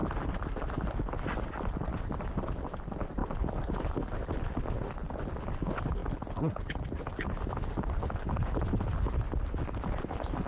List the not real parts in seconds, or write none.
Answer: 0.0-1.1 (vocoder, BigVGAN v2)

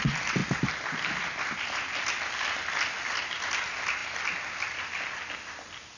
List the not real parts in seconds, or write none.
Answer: 0.4-1.9 (vocoder, BigVGAN v2); 4.0-4.8

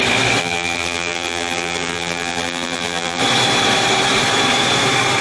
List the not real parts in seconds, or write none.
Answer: 0.4-3.2 (vocoder, BigVGAN v2)